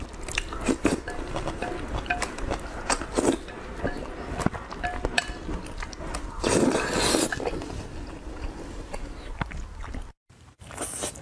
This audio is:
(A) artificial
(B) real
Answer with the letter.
B